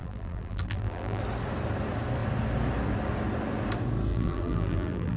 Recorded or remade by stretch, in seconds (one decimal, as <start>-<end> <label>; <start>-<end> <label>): 0.0-1.2 remade; 1.2-4.1 recorded; 4.1-5.2 remade